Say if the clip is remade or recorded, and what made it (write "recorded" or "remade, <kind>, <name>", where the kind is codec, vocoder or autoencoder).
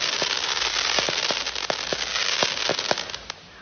recorded